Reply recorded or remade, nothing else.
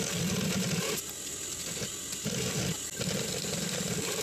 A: recorded